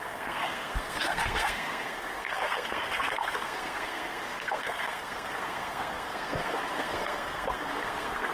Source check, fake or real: fake